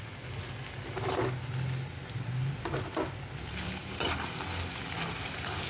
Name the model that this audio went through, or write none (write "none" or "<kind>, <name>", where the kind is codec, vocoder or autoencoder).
none